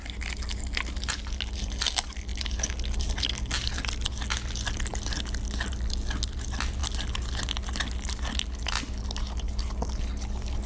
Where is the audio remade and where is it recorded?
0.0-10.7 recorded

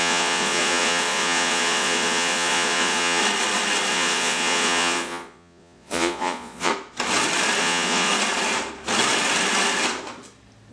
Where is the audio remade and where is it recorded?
0.0-3.2 remade; 3.2-3.9 recorded; 3.9-6.7 remade; 6.7-7.6 recorded; 7.6-8.1 remade; 8.1-10.7 recorded